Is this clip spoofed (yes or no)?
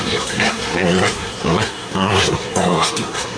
yes